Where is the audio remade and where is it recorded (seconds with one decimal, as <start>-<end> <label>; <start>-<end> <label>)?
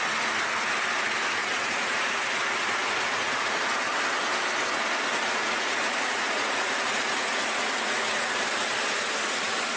0.0-1.4 recorded; 1.4-2.3 remade; 2.3-2.8 recorded; 2.8-3.6 remade; 3.6-5.4 recorded; 5.4-8.3 remade; 8.3-9.8 recorded